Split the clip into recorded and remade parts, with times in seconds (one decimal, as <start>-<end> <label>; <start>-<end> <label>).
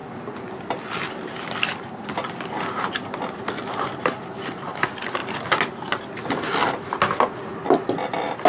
0.0-8.5 recorded